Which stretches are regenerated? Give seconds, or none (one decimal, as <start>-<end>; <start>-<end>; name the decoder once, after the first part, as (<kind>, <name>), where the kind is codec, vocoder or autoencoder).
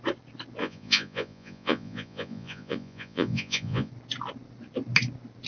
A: 0.6-3.9 (vocoder, Vocos)